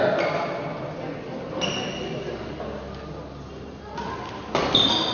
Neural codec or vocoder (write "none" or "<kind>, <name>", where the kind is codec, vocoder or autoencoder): none